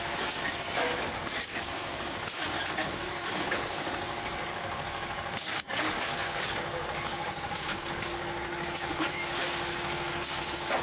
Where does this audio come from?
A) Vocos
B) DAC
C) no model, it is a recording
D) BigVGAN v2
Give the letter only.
B